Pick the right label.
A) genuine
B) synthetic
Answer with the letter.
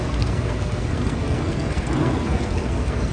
B